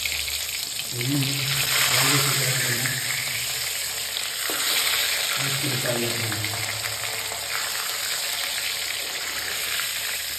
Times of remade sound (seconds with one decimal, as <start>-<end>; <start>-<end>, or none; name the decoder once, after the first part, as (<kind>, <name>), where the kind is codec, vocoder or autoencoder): 0.0-5.0 (vocoder, BigVGAN v2); 9.0-10.4